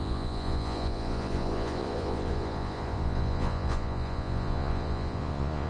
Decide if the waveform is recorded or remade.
remade